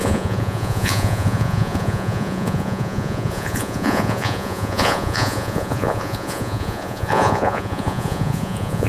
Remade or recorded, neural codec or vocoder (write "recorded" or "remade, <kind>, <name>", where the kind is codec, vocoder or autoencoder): remade, vocoder, Vocos